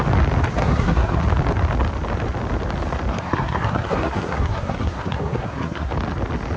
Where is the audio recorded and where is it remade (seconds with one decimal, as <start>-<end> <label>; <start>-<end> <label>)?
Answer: 0.0-0.6 recorded; 0.6-1.2 remade; 1.2-3.1 recorded; 3.1-5.9 remade; 5.9-6.6 recorded